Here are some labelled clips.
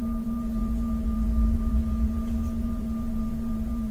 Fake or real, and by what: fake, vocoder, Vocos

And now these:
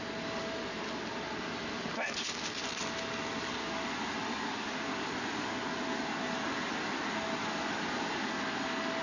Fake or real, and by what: real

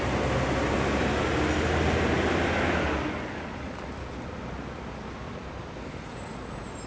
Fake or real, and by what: real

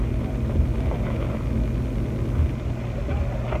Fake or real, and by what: real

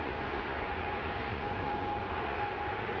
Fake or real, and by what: fake, vocoder, Vocos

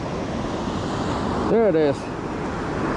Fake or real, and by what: real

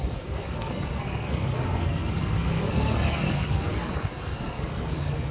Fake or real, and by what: fake, codec, SNAC